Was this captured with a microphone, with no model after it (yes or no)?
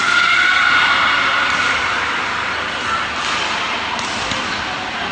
yes